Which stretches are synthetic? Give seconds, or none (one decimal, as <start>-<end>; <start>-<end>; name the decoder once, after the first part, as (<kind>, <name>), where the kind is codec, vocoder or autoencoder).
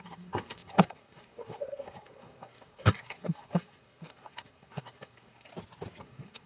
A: 0.0-5.5 (codec, SNAC); 6.0-6.5